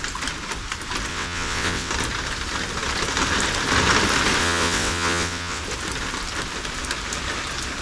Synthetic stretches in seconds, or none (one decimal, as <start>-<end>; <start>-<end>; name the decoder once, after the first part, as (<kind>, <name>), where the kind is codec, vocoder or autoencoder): 1.1-1.9 (vocoder, WaveNeXt); 4.4-5.6